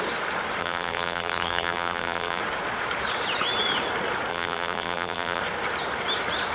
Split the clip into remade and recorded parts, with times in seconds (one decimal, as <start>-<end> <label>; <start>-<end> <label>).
0.0-0.6 recorded; 0.6-2.4 remade; 2.4-4.3 recorded; 4.3-5.4 remade; 5.4-6.5 recorded